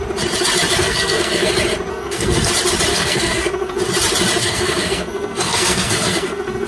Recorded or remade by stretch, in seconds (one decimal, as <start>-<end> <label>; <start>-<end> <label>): 0.0-0.8 recorded; 0.8-1.5 remade; 1.5-1.9 recorded; 1.9-2.5 remade; 2.5-2.9 recorded; 2.9-3.8 remade; 3.8-4.4 recorded; 4.4-6.7 remade